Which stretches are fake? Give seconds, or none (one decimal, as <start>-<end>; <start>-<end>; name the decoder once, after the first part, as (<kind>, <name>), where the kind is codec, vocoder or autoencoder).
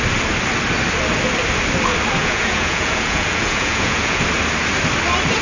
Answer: 2.2-4.2 (vocoder, Vocos)